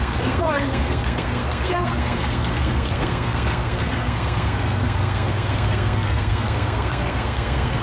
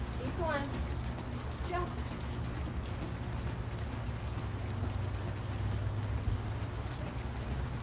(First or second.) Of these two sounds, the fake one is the first